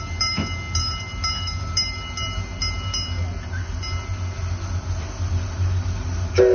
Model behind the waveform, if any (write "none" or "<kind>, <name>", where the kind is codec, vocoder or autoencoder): none